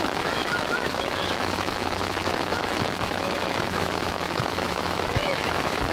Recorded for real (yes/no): no